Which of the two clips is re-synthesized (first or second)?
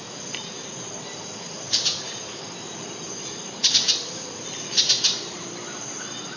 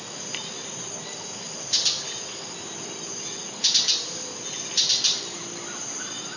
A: first